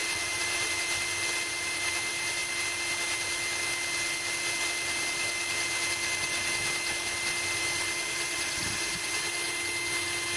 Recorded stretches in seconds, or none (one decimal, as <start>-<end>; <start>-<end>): 0.7-10.4